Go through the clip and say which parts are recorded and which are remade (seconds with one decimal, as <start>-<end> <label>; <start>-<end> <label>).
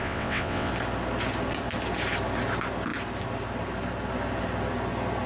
0.0-0.7 remade; 0.7-5.3 recorded